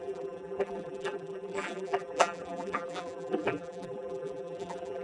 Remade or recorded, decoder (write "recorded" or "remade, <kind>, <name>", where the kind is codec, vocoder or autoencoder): remade, vocoder, BigVGAN v2